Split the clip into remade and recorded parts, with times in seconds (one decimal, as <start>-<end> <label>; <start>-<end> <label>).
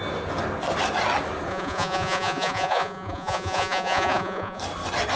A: 0.0-1.5 recorded; 1.5-4.6 remade; 4.6-5.2 recorded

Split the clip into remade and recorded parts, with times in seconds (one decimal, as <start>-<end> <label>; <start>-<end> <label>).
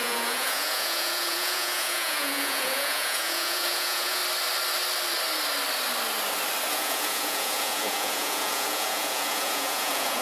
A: 0.0-4.2 remade; 4.2-6.7 recorded; 6.7-10.2 remade